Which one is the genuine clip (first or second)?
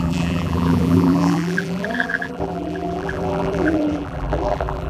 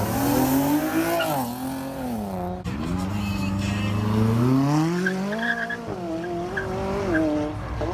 second